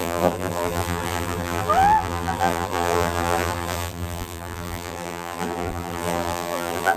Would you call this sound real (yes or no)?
no